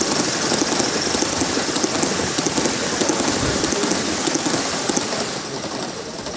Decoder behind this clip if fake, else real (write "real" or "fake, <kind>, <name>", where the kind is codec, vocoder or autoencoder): real